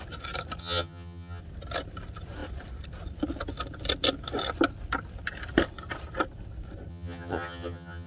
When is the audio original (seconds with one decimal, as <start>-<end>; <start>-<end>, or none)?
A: 0.0-0.6; 1.4-6.9